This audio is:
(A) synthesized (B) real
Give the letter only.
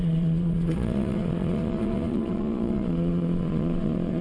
A